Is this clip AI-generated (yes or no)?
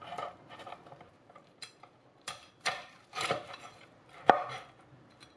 yes